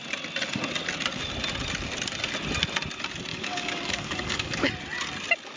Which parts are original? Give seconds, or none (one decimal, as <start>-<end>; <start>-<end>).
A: 0.0-3.3; 4.7-5.6